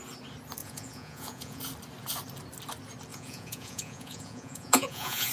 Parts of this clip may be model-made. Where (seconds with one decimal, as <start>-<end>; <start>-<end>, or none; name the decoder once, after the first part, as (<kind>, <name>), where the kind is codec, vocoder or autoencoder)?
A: 0.6-1.6 (vocoder, Vocos); 3.1-5.3